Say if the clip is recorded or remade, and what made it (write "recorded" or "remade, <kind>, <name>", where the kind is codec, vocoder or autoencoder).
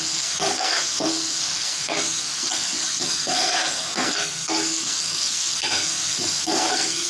remade, codec, SNAC